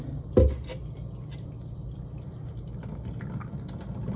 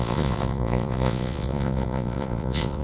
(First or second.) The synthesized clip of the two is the second